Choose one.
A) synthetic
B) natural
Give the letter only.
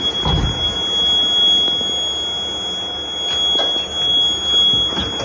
B